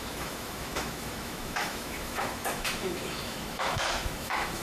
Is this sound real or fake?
fake